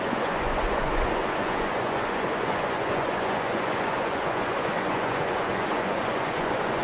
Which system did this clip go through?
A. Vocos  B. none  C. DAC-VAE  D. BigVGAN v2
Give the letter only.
A